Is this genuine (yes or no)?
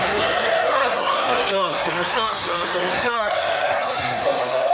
no